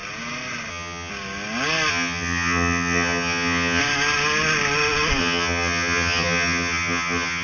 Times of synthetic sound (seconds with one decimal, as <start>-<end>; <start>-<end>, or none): 0.7-1.1; 1.9-3.8; 5.2-7.4